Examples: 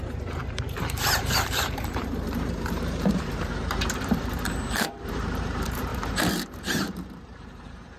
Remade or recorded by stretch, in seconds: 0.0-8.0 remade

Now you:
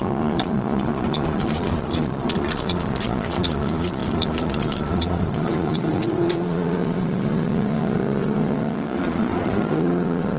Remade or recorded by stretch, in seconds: 0.0-10.4 remade

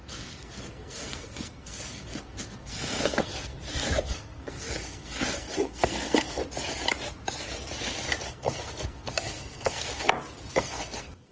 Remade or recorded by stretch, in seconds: 0.0-6.4 remade; 6.4-8.3 recorded; 8.3-9.9 remade; 9.9-10.6 recorded; 10.6-11.3 remade

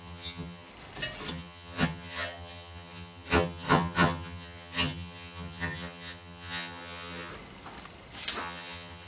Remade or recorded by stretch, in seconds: 0.0-0.7 remade; 0.7-1.3 recorded; 1.3-7.3 remade; 7.3-8.4 recorded; 8.4-9.1 remade

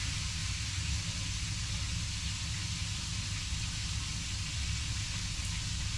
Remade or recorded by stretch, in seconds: 0.0-0.4 recorded; 0.4-0.9 remade; 0.9-6.0 recorded

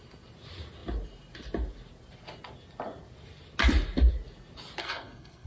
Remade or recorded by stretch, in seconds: 0.0-4.8 recorded; 4.8-5.5 remade